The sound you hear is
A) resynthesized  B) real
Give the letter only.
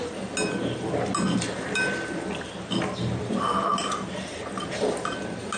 B